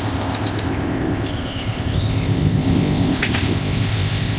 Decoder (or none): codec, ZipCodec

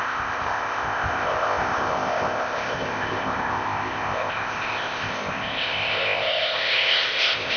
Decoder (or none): codec, ZipCodec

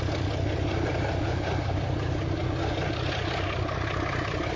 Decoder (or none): none